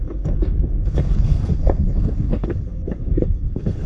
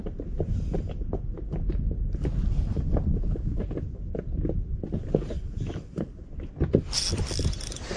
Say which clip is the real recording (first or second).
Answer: second